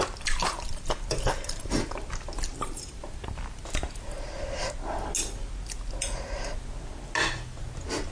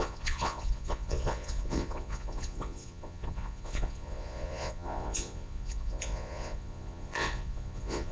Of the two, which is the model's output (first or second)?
second